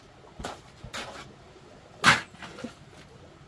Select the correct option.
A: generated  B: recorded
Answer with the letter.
B